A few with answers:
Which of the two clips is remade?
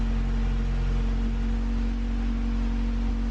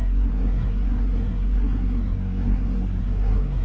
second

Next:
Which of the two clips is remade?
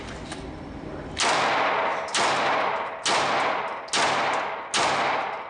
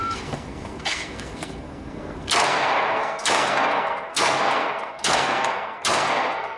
second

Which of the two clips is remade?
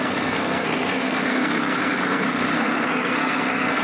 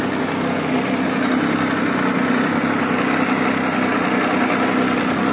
first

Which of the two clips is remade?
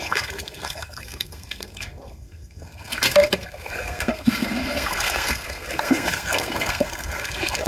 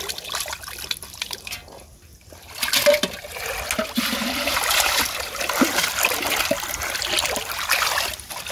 first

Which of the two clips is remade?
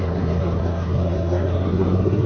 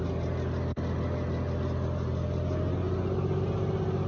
first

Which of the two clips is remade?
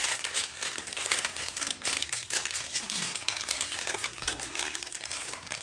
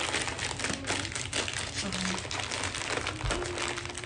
first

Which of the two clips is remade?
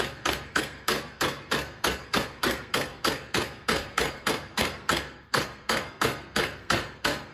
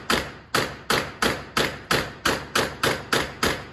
first